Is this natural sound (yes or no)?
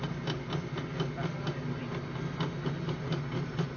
yes